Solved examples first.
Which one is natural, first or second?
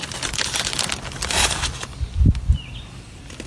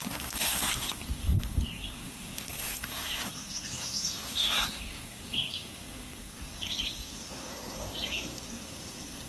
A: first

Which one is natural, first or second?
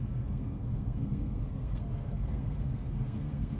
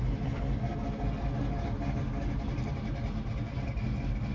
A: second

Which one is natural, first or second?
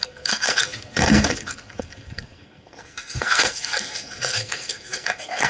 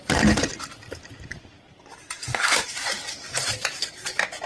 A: second